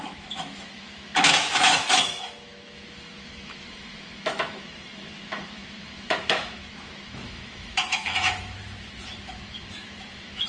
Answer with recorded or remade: remade